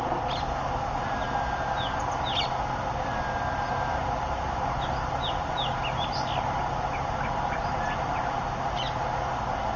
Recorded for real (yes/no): yes